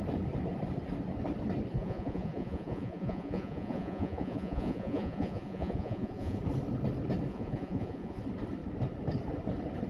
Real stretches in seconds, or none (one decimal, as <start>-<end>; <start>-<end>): 0.0-1.7; 6.4-7.3; 8.2-9.9